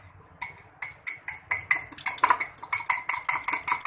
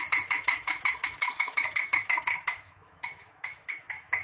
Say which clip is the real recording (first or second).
first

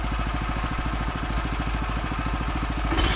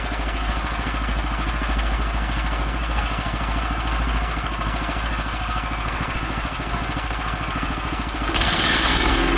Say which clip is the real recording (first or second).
first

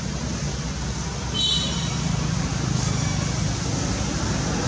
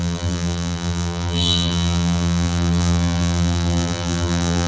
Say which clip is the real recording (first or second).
first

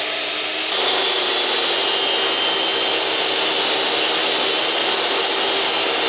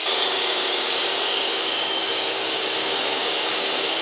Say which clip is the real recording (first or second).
first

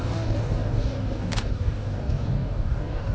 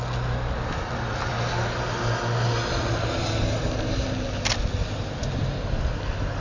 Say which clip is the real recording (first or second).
second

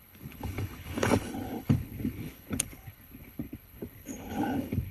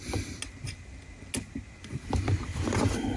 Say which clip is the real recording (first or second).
second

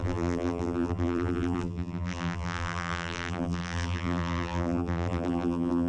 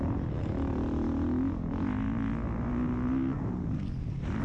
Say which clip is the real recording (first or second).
second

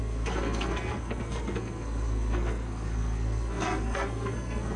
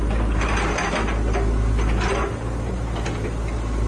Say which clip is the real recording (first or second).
second